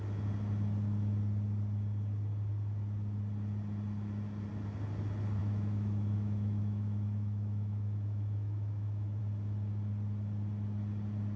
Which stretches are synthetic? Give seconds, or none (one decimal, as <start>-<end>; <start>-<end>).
5.4-9.2